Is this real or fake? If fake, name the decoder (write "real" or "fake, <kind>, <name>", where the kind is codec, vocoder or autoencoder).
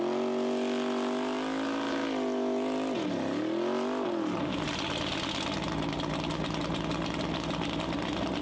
real